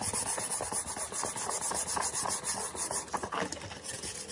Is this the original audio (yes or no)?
yes